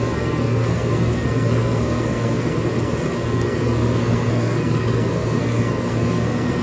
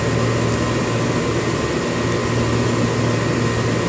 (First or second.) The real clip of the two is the second